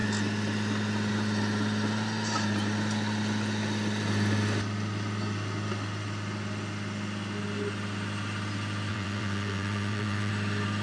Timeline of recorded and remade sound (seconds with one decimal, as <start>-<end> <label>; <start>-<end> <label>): 0.0-8.9 recorded; 8.9-10.3 remade; 10.3-10.8 recorded